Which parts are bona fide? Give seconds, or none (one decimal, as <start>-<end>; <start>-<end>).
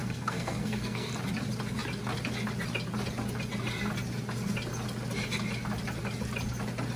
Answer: 1.1-7.0